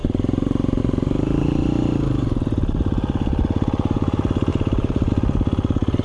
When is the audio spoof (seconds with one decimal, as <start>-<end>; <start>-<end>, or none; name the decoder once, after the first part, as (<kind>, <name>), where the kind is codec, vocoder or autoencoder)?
0.0-0.8 (vocoder, BigVGAN v2); 4.5-5.1